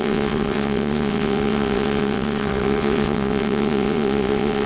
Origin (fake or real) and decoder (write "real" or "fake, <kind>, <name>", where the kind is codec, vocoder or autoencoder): fake, vocoder, WaveNeXt